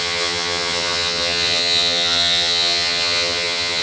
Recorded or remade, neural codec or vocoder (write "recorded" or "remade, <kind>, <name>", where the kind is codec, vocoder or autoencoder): remade, vocoder, HiFi-GAN